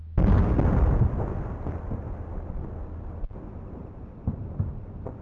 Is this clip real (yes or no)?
yes